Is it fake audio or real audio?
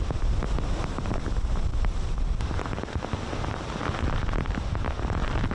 real